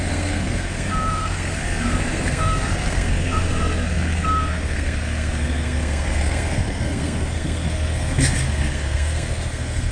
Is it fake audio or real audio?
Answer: fake